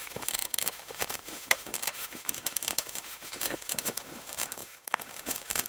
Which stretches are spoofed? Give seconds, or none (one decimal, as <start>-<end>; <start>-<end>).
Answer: 0.0-5.7